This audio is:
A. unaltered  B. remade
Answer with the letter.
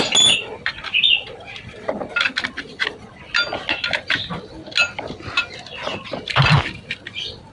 A